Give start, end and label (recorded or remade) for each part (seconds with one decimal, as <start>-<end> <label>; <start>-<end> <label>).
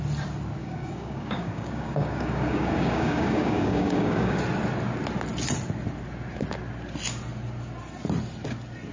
0.0-0.6 recorded; 0.6-4.4 remade; 4.4-8.9 recorded